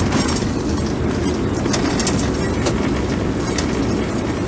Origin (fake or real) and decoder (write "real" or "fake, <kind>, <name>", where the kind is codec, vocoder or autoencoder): real